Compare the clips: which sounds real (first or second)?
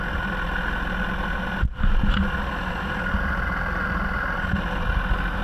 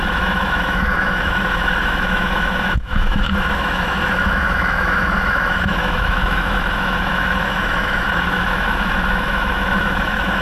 first